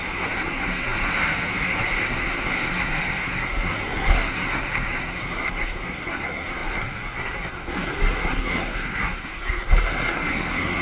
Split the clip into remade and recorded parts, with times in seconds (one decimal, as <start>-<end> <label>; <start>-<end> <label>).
0.0-10.8 remade